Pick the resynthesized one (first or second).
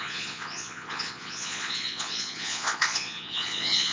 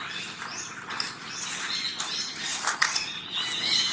first